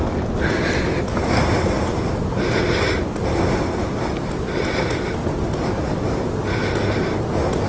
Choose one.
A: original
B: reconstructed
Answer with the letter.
A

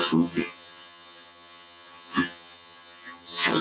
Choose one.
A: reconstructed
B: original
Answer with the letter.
A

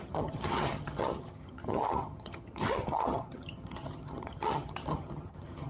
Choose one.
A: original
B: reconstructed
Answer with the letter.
B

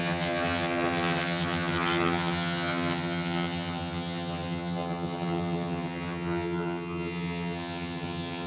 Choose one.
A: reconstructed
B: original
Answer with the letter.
A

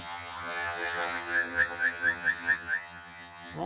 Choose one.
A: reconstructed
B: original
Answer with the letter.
A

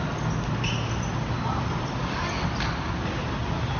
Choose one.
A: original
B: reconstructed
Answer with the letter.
A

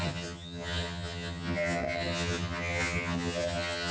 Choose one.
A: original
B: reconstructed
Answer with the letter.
B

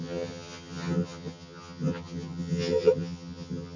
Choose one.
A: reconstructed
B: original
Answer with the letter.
A